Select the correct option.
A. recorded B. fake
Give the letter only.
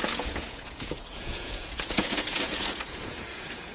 B